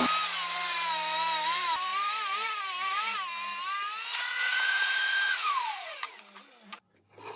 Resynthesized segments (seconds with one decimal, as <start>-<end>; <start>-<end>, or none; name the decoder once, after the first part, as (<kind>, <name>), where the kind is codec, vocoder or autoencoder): 4.1-6.2 (vocoder, Vocos)